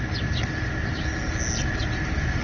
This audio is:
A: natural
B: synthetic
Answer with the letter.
A